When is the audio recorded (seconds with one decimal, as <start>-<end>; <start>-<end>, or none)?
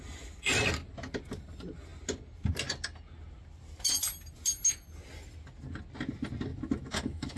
0.0-6.5